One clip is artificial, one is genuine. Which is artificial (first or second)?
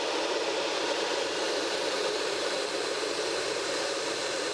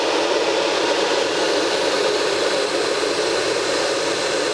first